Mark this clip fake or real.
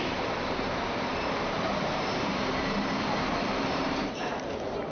fake